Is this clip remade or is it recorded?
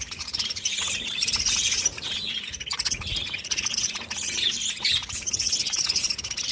remade